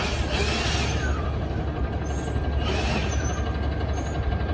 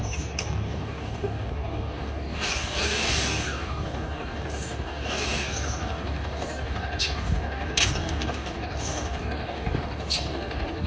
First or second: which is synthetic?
second